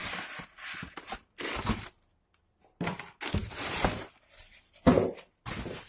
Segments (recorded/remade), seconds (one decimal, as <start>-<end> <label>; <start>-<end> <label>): 0.0-5.9 recorded